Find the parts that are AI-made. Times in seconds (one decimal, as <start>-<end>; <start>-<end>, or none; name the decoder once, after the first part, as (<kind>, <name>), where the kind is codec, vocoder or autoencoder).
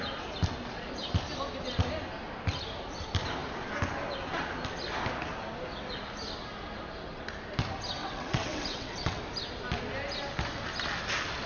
8.0-9.2 (vocoder, WaveNeXt)